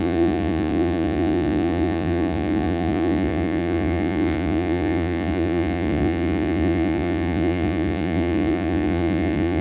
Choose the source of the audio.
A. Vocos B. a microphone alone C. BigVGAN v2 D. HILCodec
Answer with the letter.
A